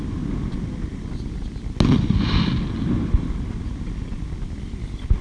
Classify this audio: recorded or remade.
recorded